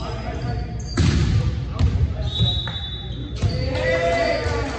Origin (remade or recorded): recorded